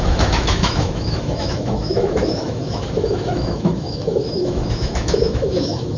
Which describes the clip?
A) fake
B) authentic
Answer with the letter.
A